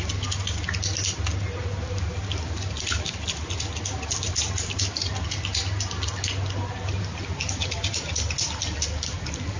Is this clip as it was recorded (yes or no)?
yes